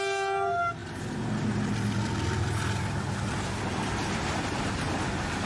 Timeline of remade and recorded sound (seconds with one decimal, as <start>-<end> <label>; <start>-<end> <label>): 0.0-5.5 recorded